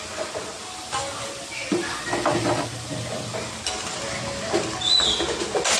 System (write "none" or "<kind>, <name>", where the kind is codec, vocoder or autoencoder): none